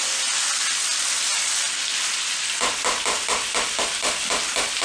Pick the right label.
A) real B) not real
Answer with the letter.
A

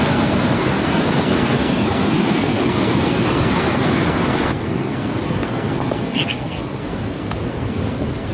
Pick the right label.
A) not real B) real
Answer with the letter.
A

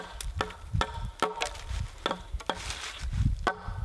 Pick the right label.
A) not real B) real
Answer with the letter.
B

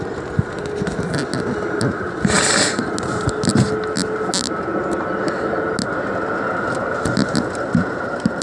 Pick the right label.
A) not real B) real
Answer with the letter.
B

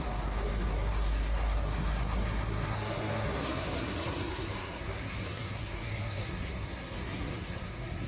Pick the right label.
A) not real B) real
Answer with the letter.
A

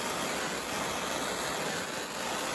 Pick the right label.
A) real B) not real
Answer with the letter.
A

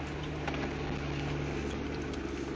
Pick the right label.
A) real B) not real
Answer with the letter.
A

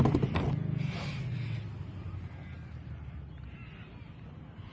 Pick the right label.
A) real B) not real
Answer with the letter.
A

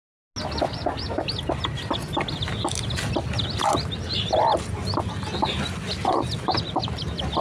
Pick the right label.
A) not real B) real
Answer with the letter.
B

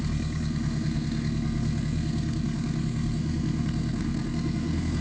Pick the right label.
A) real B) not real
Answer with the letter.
B